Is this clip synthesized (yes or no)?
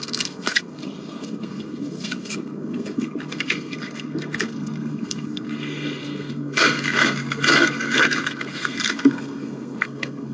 yes